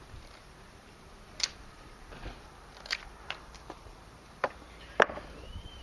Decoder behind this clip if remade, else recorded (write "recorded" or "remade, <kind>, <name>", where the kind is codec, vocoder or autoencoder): remade, vocoder, BigVGAN v2